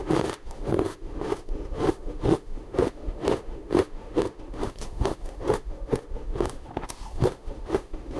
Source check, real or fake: fake